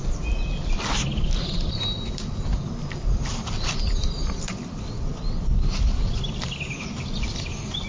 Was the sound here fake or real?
real